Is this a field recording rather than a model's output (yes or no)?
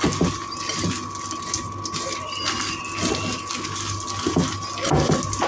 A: yes